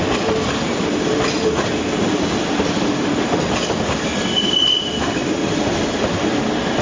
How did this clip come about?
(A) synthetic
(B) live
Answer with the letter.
B